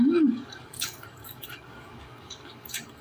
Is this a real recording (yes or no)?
no